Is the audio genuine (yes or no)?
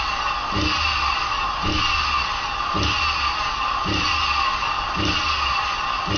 yes